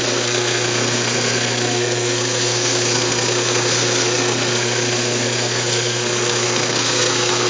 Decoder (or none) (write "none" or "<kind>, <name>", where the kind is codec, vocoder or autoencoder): codec, SNAC